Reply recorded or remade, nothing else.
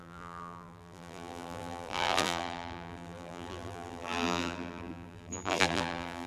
remade